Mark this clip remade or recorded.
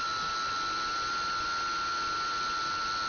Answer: recorded